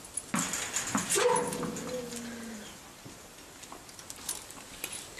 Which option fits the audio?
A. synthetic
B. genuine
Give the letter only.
B